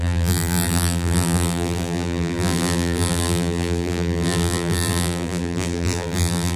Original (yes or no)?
no